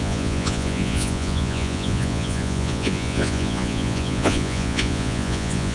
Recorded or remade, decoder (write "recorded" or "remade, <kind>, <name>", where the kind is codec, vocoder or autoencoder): remade, vocoder, Vocos